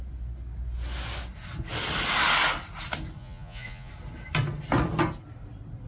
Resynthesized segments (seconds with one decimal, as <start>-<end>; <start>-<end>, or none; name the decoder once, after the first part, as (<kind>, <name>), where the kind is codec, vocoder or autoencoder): 3.2-3.9 (vocoder, Vocos)